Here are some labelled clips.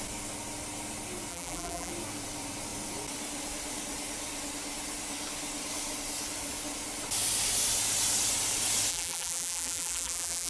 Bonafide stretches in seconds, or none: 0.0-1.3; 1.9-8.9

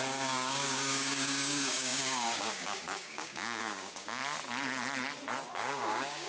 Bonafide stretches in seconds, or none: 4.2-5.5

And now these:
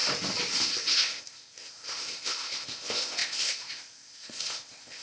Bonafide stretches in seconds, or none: 0.0-0.6

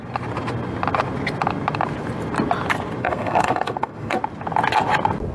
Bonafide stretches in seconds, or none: 0.0-3.0; 4.2-5.3

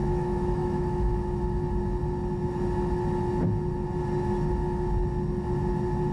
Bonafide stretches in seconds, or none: 1.4-6.1